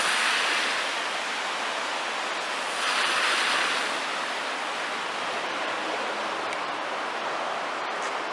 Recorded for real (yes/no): yes